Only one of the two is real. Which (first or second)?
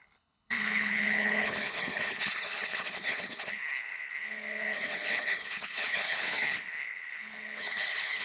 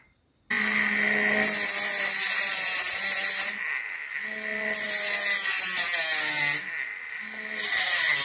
second